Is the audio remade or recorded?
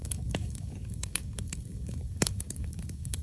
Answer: remade